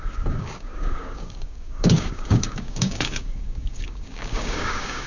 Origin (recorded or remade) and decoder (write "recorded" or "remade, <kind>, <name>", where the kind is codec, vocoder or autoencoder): remade, codec, DAC